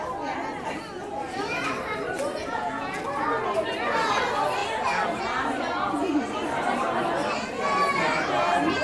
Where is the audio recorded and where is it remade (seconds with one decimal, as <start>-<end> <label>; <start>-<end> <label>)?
0.0-2.4 recorded; 2.4-3.0 remade; 3.0-8.8 recorded